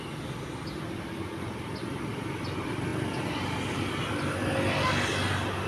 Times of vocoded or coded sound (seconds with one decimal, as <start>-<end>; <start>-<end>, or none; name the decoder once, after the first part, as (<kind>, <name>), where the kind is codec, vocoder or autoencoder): none